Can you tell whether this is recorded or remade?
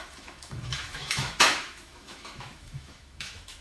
remade